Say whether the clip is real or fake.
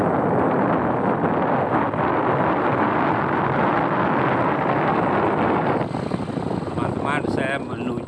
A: real